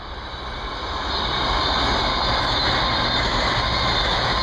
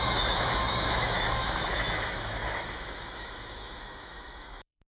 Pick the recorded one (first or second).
first